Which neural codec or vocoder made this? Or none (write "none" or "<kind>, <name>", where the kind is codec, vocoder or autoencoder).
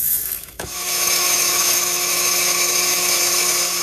autoencoder, DAC-VAE